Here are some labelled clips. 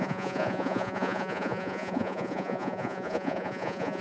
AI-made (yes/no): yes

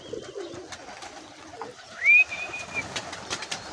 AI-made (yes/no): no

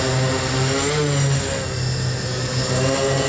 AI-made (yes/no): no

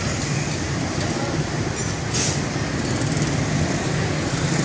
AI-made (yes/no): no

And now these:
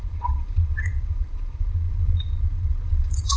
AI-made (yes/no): yes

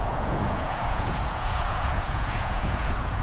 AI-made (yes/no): yes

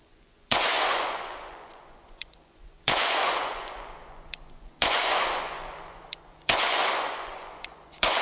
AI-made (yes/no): yes